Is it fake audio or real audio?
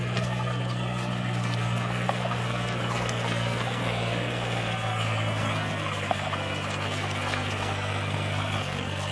fake